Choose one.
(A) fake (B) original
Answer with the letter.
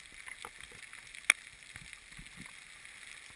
B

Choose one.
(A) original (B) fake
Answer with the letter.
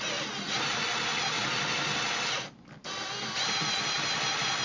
A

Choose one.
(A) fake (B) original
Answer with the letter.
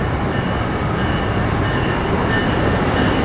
B